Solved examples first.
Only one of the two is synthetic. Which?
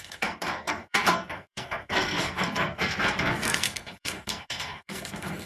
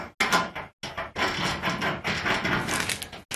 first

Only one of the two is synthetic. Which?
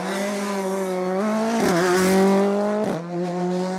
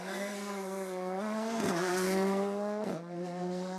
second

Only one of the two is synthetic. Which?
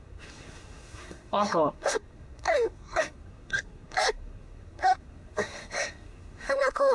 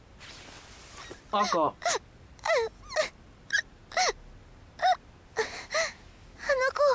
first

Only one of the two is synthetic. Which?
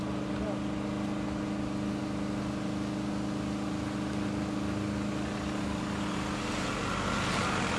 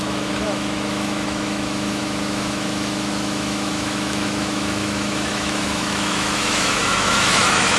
second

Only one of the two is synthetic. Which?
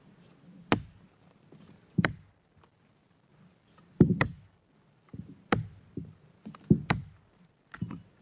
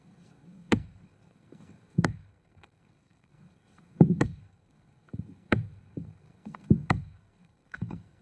second